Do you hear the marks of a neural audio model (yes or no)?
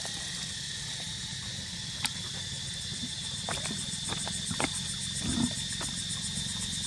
no